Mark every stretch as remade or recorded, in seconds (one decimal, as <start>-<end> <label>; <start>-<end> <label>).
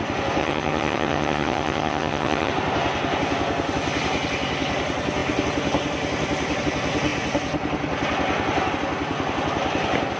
0.0-0.4 recorded; 0.4-2.5 remade; 2.5-10.2 recorded